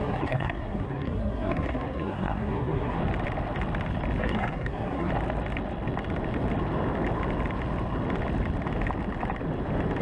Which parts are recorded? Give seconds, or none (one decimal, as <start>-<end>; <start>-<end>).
3.0-4.2; 5.1-10.0